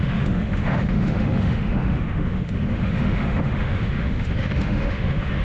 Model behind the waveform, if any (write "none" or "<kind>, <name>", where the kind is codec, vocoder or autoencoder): autoencoder, DAC-VAE